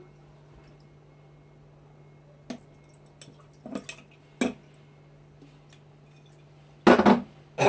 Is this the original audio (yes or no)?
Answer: yes